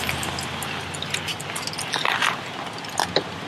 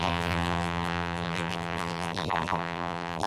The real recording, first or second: first